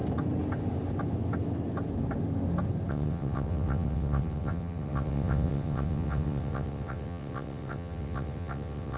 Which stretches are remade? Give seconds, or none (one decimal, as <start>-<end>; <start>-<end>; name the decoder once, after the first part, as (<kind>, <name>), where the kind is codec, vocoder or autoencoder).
2.9-9.0 (vocoder, WaveNeXt)